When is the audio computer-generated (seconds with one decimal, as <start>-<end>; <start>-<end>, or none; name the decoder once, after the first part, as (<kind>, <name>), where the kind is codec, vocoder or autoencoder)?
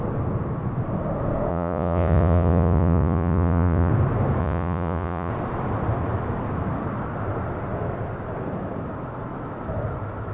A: 1.5-3.9 (vocoder, Vocos); 4.4-5.3